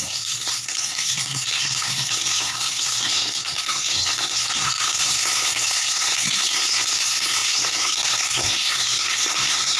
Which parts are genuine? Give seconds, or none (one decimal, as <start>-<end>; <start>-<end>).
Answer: none